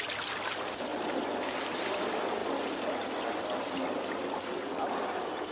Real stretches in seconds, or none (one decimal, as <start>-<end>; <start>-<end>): 0.0-5.5